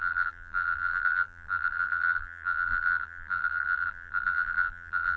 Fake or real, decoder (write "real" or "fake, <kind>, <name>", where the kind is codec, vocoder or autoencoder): fake, vocoder, BigVGAN v2